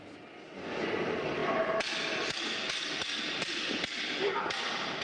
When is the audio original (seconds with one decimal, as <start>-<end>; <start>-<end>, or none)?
0.0-5.0